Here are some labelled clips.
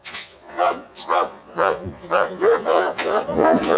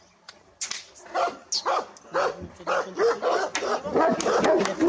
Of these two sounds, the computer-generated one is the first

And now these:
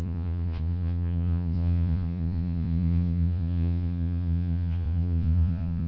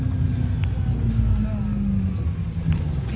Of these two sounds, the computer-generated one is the first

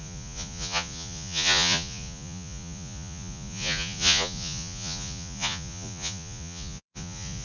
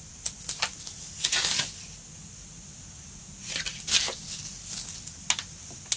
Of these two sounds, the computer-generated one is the first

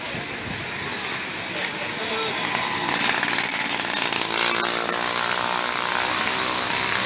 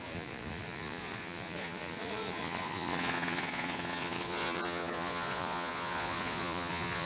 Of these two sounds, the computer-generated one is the second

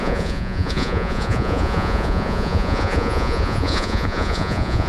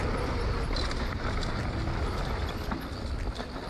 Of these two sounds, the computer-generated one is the first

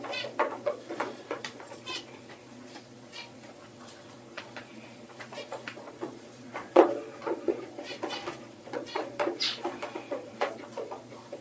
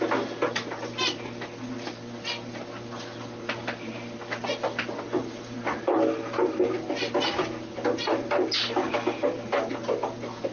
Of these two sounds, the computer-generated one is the first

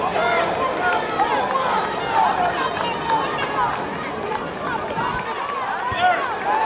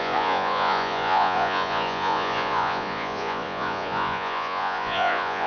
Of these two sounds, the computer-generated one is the second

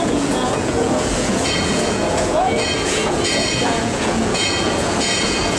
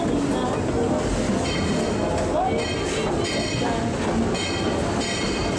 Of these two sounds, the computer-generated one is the first